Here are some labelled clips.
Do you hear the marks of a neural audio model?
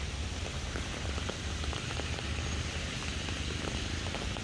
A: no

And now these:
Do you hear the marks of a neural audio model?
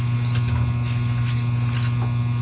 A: no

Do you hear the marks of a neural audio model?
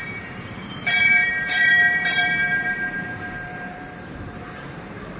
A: yes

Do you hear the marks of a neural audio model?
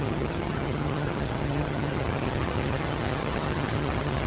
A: yes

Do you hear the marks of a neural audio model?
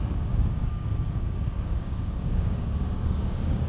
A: yes